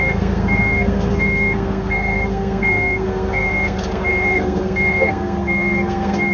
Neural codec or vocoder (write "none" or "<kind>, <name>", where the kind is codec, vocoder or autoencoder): codec, SNAC